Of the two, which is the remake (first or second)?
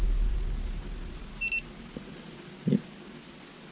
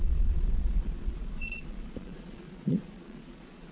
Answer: second